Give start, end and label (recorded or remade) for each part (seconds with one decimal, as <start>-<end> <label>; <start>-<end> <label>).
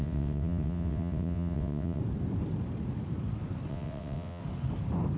0.0-2.0 remade; 2.0-3.7 recorded; 3.7-4.4 remade; 4.4-5.2 recorded